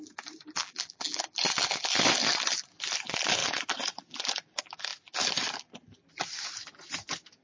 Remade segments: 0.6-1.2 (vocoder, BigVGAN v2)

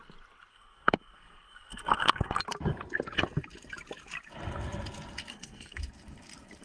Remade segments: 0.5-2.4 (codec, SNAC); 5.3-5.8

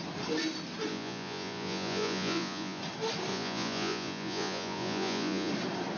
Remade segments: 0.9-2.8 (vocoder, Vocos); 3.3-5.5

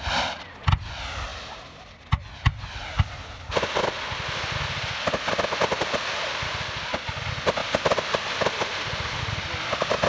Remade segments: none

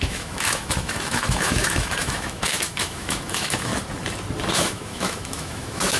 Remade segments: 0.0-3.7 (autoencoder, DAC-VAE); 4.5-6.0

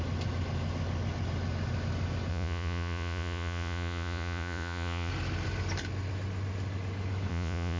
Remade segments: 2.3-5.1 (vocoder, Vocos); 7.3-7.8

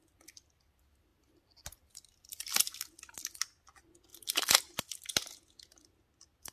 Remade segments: 1.1-2.7 (vocoder, BigVGAN v2); 4.1-4.6

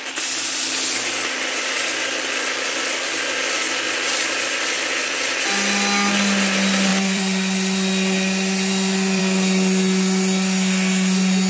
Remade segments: 6.9-9.2 (vocoder, BigVGAN v2)